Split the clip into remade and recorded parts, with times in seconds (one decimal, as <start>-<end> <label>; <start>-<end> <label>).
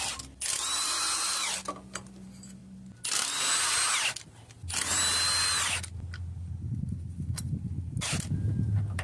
0.0-9.0 recorded